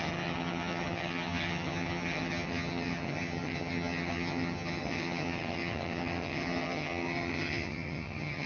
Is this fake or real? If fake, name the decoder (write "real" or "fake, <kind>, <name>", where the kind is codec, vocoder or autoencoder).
fake, vocoder, HiFi-GAN